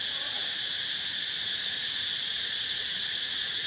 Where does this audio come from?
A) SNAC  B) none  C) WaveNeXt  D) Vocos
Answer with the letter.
D